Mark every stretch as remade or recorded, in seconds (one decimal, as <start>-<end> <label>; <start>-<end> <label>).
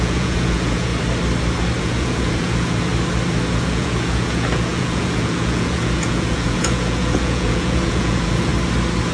0.0-0.9 remade; 0.9-1.8 recorded; 1.8-2.9 remade; 2.9-3.5 recorded; 3.5-8.5 remade; 8.5-9.1 recorded